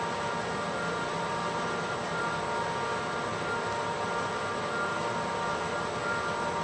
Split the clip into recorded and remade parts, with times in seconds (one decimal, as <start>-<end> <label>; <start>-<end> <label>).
0.0-6.6 recorded